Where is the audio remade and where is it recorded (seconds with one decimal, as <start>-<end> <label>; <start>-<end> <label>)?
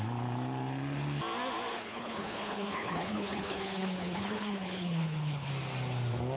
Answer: 0.0-1.7 recorded; 1.7-5.5 remade; 5.5-6.4 recorded